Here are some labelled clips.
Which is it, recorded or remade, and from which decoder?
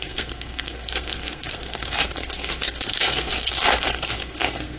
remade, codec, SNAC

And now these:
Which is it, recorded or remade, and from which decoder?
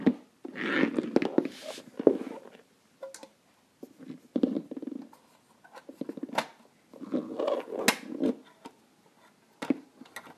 recorded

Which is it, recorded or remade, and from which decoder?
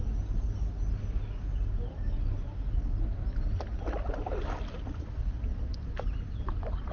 recorded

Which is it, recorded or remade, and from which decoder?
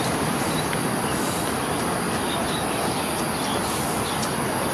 recorded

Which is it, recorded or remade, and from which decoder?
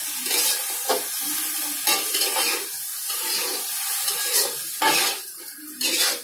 recorded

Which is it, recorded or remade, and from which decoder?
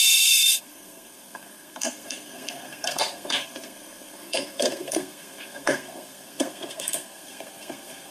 remade, codec, SNAC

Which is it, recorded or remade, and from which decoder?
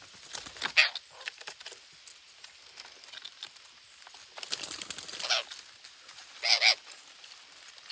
recorded